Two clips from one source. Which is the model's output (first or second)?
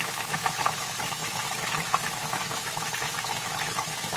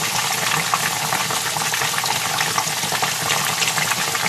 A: first